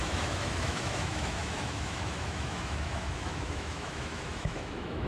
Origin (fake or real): fake